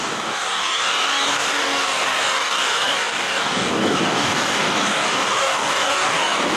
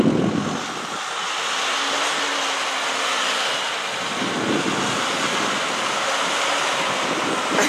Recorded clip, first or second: second